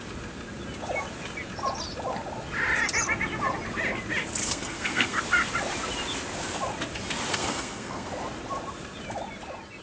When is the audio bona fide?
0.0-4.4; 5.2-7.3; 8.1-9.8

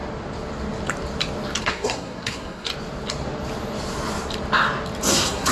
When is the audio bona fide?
0.0-1.6; 2.7-5.1

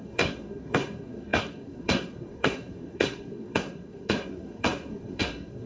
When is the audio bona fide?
none

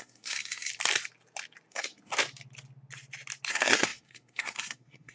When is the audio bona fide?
0.7-1.7; 2.1-3.5